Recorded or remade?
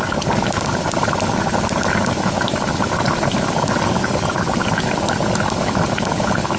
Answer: recorded